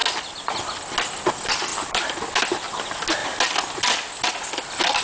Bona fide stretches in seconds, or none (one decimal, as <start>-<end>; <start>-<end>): 0.0-5.0

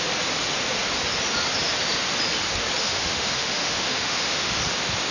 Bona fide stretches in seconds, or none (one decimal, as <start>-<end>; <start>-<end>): 0.0-2.8; 4.6-5.1

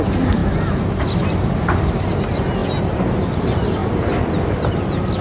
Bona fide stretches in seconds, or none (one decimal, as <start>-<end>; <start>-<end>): 0.0-5.2

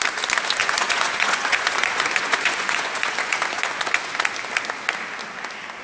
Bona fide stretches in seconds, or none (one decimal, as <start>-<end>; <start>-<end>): 0.0-0.6; 4.1-5.8

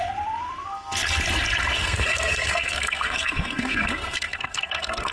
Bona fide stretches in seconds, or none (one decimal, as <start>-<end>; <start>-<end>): 0.0-1.8

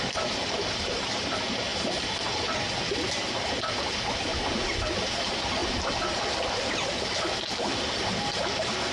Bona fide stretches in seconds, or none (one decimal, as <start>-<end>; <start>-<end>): 4.3-4.9; 5.6-8.9

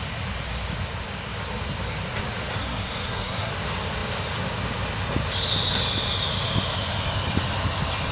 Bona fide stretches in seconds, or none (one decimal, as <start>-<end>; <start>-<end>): 0.0-2.6; 3.5-8.1